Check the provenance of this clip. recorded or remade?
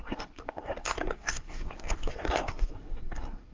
remade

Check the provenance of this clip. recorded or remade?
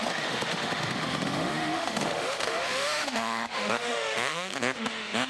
remade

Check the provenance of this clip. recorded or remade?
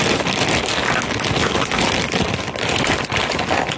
recorded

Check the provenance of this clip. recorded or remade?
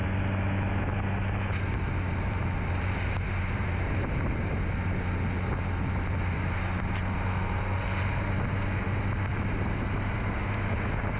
recorded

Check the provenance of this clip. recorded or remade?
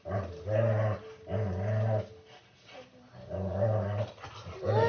recorded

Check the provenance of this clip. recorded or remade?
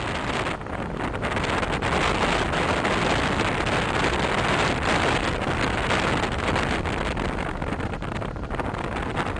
recorded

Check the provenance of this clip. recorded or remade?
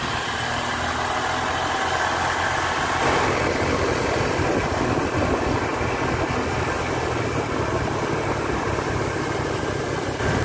recorded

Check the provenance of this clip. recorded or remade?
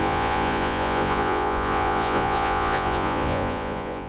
remade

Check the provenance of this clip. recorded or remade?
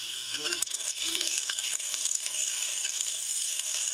remade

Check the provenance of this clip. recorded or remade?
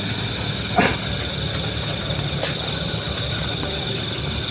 recorded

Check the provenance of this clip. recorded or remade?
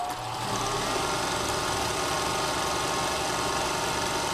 recorded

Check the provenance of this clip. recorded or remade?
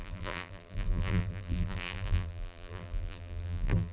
remade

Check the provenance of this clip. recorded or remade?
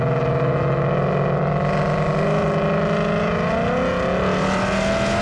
recorded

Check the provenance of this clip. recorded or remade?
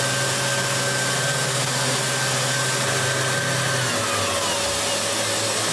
recorded